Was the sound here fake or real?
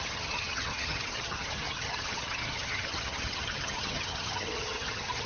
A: fake